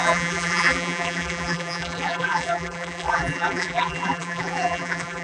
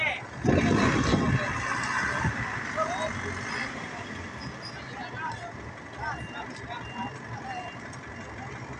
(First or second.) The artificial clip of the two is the first